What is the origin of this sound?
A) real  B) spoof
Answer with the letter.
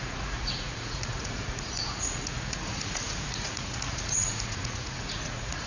B